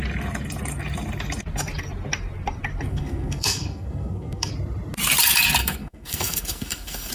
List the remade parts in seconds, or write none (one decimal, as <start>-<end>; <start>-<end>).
2.9-4.5; 5.6-7.1